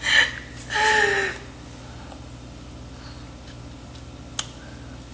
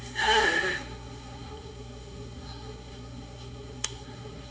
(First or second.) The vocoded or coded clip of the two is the second